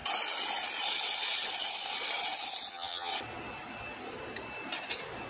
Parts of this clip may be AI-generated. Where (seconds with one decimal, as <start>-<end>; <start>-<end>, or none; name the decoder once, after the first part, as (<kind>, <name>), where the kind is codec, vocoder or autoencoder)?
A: 2.7-3.1 (vocoder, HiFi-GAN)

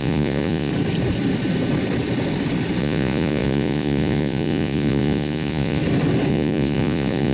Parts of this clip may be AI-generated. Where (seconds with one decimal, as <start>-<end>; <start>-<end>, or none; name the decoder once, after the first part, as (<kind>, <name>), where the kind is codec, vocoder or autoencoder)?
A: 0.0-0.7 (vocoder, Vocos); 2.8-5.8; 6.3-7.3

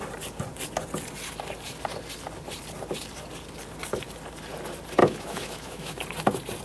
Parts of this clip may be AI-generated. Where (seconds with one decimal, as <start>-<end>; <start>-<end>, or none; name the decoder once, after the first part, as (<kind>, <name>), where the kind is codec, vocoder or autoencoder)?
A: 5.0-6.0 (autoencoder, DAC-VAE)

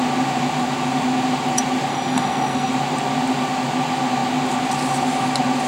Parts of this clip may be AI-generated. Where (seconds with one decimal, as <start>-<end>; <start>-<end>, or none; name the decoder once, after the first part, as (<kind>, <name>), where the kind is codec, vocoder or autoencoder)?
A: 1.9-2.7 (codec, SNAC)